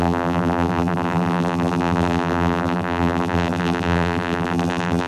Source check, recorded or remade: remade